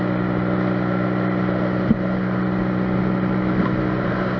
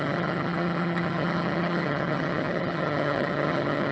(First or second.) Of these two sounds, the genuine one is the first